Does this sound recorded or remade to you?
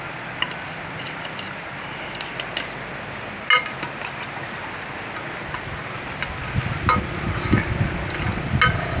recorded